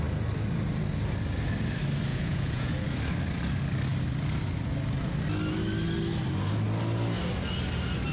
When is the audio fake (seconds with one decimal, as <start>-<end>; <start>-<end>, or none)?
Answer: 2.1-2.7